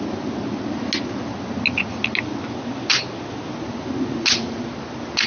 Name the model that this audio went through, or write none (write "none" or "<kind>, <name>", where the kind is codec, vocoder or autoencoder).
none